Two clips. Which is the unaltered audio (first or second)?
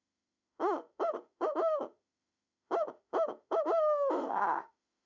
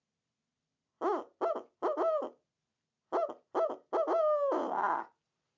second